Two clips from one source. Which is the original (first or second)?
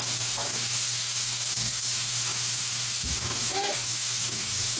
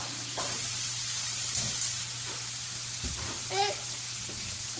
second